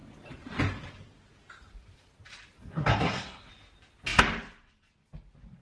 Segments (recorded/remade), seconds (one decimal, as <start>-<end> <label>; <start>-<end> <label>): 0.0-2.6 recorded; 2.6-3.5 remade; 3.5-5.6 recorded